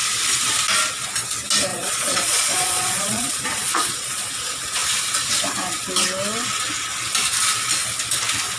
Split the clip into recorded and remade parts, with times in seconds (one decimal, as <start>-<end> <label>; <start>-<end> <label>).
0.0-1.7 recorded; 1.7-4.3 remade; 4.3-8.6 recorded